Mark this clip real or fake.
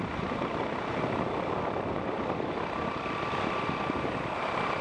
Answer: real